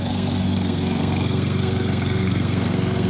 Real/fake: fake